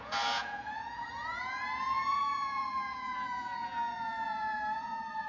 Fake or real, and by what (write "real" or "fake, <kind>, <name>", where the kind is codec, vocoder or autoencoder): fake, vocoder, Vocos